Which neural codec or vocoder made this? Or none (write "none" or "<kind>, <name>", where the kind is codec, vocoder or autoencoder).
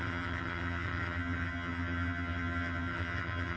vocoder, HiFi-GAN